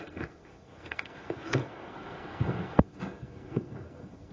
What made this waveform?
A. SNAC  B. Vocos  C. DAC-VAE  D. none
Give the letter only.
A